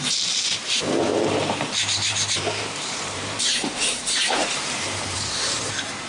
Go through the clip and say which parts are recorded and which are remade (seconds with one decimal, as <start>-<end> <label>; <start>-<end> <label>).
0.0-6.1 remade